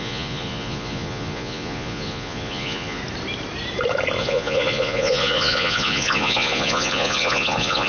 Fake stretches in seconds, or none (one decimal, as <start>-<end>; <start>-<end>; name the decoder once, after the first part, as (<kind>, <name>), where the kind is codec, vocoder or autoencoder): 0.0-3.0 (vocoder, Vocos); 4.2-7.9

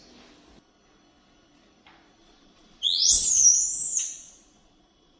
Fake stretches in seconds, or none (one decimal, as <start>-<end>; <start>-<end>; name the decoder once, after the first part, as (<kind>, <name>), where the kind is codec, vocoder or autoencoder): 2.2-3.3 (vocoder, Vocos); 3.9-5.2

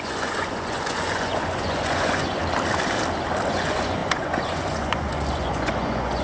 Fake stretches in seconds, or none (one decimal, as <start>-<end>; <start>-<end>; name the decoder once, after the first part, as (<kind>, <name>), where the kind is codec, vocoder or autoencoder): 0.0-2.4 (vocoder, Vocos); 3.5-6.2

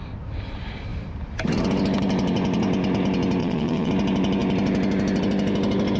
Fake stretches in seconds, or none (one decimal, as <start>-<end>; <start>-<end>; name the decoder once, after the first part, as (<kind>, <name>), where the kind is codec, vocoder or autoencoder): 3.4-3.9 (vocoder, Vocos)

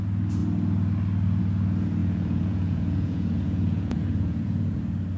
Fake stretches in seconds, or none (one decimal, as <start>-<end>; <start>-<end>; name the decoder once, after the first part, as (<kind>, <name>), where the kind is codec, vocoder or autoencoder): 2.0-4.8 (vocoder, Vocos)

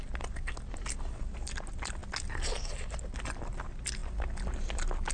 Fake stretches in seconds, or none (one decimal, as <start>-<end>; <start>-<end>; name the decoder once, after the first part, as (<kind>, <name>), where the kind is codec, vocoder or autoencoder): none